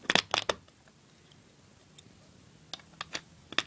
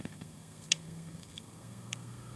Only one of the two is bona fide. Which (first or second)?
first